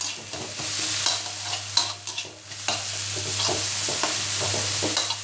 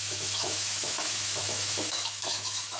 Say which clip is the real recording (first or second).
first